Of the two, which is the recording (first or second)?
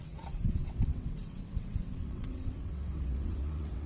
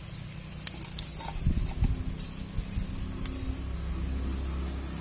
second